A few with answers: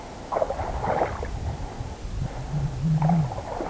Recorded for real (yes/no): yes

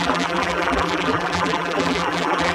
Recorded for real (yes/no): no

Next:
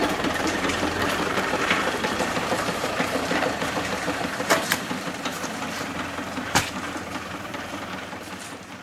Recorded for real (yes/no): no